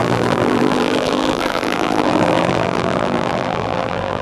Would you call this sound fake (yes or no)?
yes